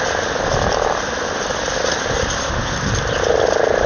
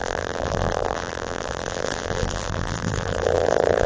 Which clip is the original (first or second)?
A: first